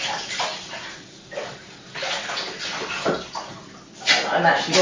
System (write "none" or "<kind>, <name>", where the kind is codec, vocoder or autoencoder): none